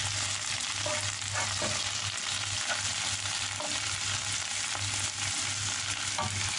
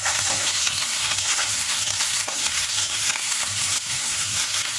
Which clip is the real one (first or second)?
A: first